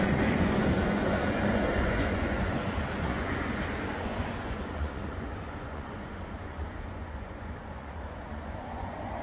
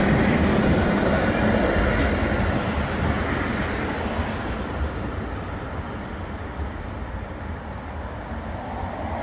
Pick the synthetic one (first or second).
first